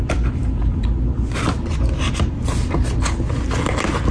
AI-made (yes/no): no